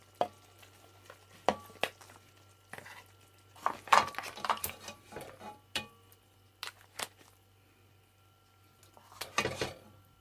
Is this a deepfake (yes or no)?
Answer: no